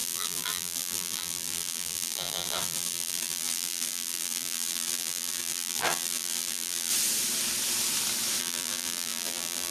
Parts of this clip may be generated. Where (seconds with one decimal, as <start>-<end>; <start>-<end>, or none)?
0.0-6.9; 8.4-9.7